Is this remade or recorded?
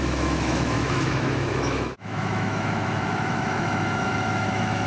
remade